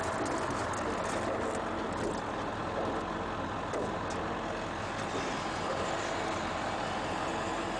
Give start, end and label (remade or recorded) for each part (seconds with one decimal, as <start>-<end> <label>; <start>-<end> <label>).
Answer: 0.0-7.8 recorded